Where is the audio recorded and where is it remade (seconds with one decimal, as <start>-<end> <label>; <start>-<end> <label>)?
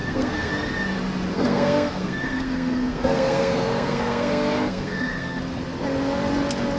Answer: 0.0-0.5 remade; 0.5-1.3 recorded; 1.3-5.4 remade; 5.4-6.8 recorded